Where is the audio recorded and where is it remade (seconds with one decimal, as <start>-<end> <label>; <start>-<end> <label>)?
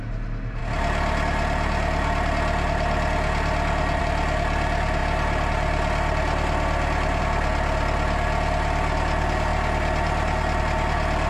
0.0-11.3 recorded